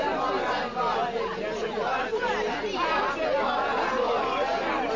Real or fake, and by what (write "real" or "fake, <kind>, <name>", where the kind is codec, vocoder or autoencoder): real